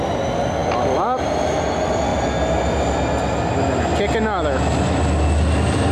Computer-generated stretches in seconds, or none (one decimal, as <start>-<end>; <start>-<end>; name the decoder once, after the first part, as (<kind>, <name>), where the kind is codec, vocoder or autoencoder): none